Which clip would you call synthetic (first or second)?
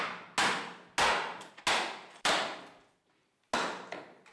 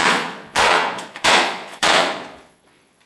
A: second